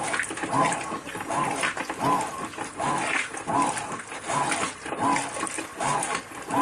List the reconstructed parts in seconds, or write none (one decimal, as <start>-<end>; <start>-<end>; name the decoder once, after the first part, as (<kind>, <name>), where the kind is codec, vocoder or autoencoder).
none